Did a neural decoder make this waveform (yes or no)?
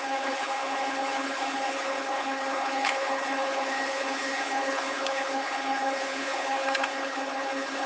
yes